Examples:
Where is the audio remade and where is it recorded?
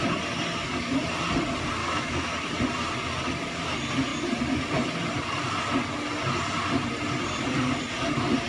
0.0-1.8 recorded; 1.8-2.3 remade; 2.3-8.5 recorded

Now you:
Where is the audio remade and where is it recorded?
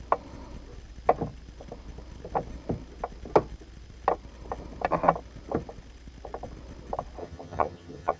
0.0-7.2 recorded; 7.2-8.2 remade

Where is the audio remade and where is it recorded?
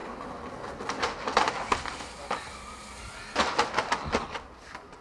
0.0-5.0 recorded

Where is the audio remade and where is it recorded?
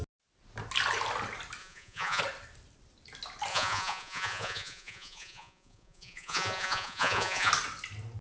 0.0-1.6 recorded; 1.6-2.2 remade; 2.2-3.5 recorded; 3.5-7.5 remade; 7.5-8.2 recorded